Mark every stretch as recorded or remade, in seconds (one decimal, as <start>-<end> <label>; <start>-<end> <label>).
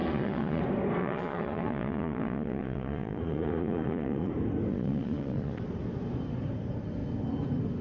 0.0-0.6 remade; 0.6-1.0 recorded; 1.0-4.3 remade; 4.3-4.7 recorded; 4.7-5.6 remade; 5.6-7.8 recorded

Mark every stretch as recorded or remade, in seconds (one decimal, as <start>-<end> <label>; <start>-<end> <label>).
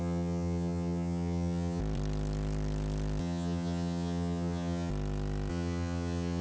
0.0-1.8 remade; 1.8-3.2 recorded; 3.2-4.9 remade; 4.9-5.5 recorded; 5.5-6.4 remade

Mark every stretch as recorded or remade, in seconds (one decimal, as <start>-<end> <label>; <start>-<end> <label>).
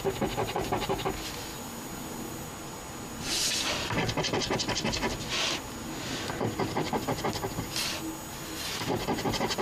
0.0-9.6 recorded